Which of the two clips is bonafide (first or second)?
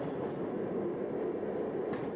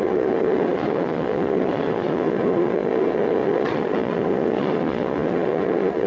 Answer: first